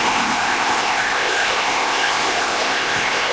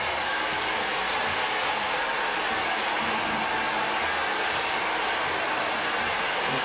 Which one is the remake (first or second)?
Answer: first